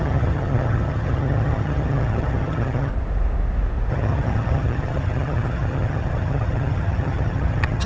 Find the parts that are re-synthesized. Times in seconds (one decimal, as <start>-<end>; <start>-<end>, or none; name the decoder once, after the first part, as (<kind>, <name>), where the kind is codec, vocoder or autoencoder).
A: 0.0-2.9 (vocoder, HiFi-GAN); 3.9-7.9